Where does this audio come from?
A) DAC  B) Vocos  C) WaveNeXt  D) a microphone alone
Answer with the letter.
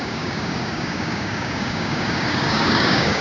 A